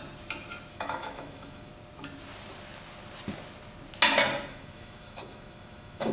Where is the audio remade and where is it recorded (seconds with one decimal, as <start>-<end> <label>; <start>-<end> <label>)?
0.0-0.7 recorded; 0.7-1.7 remade; 1.7-4.5 recorded; 4.5-6.1 remade